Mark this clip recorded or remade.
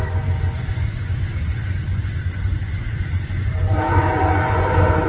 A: remade